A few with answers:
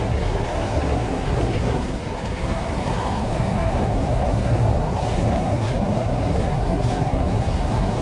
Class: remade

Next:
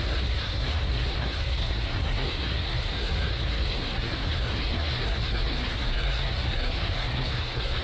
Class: remade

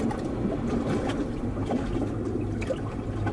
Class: recorded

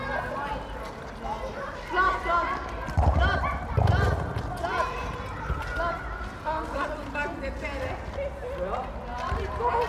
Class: recorded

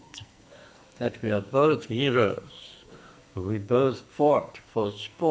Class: remade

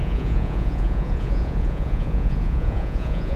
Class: remade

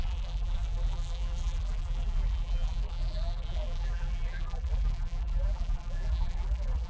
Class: remade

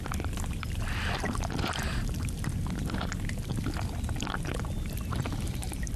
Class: recorded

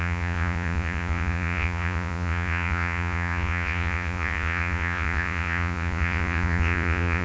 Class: remade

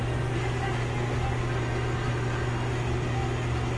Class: recorded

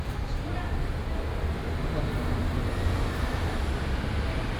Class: recorded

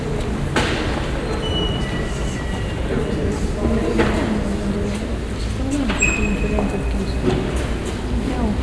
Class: recorded